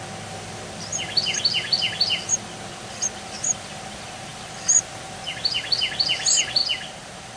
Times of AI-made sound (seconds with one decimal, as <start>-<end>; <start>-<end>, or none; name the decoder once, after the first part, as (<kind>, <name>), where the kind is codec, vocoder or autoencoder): none